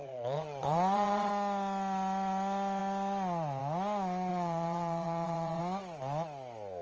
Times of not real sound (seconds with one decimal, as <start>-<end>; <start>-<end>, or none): 0.0-1.3; 4.3-5.6